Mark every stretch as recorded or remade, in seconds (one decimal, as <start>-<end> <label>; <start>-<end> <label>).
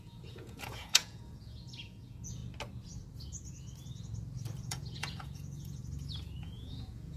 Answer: 0.0-2.4 remade; 2.4-4.6 recorded; 4.6-5.8 remade; 5.8-6.4 recorded; 6.4-7.2 remade